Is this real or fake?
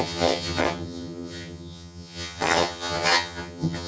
fake